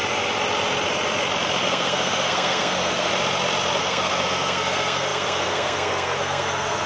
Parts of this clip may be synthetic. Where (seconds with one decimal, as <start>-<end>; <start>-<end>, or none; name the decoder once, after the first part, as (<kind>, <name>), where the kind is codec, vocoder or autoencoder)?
1.6-3.1 (codec, SNAC); 3.8-6.9